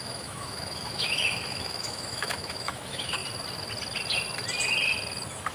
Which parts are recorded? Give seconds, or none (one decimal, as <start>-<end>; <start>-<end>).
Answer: 3.2-5.5